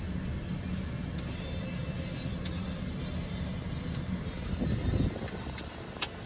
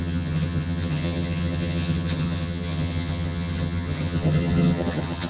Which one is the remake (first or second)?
second